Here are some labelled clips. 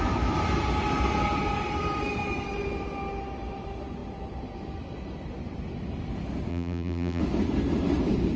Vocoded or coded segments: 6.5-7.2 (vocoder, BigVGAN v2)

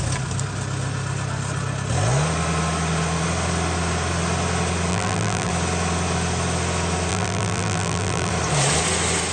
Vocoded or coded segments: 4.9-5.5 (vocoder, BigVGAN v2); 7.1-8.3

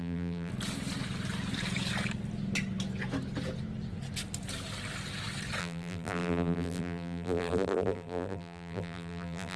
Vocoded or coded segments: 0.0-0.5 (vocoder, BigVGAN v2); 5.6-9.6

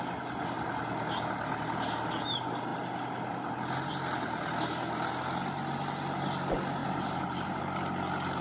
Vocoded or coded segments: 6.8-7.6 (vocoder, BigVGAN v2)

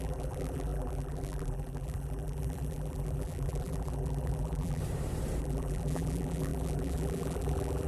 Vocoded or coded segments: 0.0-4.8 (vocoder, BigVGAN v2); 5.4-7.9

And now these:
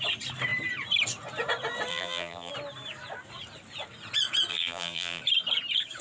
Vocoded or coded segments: 1.9-2.5 (vocoder, BigVGAN v2); 4.5-5.2

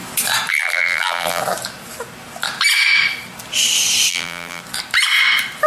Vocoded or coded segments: 0.5-1.4 (vocoder, BigVGAN v2); 4.1-4.6

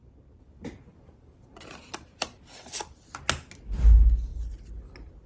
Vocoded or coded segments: 0.0-3.2 (vocoder, BigVGAN v2)